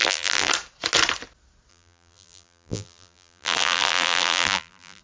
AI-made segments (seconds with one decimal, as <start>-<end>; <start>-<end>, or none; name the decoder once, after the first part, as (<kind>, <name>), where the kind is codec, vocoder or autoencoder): 0.0-0.5 (vocoder, BigVGAN v2); 1.7-5.0